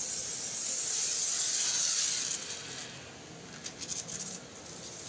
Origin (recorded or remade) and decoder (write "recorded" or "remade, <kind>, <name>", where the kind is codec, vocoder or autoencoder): recorded